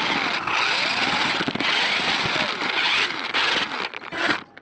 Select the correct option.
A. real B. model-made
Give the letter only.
A